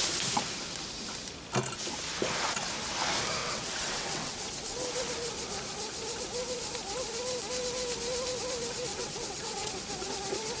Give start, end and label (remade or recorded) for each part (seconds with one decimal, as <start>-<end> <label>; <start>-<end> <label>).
0.0-3.4 recorded; 3.4-4.5 remade; 4.5-8.9 recorded; 8.9-9.7 remade; 9.7-10.6 recorded